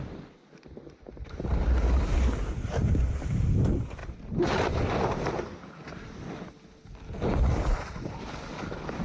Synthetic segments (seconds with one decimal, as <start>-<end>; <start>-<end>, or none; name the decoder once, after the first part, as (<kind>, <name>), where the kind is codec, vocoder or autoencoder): 2.8-3.6 (vocoder, BigVGAN v2); 4.0-5.0